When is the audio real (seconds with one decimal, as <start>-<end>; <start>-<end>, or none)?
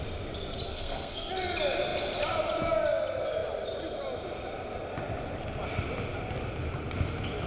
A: 0.0-0.7; 1.3-7.5